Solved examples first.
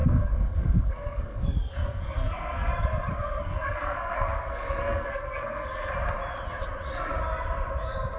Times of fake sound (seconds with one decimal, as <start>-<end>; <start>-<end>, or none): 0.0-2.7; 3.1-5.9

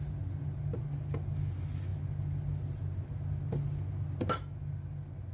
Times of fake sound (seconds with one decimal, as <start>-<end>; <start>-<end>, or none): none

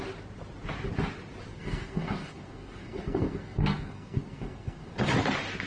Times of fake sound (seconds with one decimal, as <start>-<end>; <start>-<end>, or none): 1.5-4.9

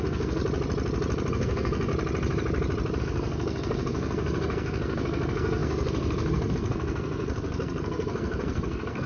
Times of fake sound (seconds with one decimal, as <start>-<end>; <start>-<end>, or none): 0.0-0.4; 1.3-1.9; 3.0-9.1

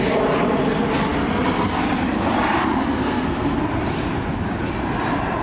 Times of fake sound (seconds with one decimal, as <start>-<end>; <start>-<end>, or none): 3.0-3.6

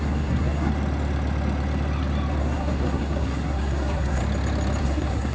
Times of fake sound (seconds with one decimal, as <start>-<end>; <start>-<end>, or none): 0.0-0.7; 2.4-4.2; 4.8-5.3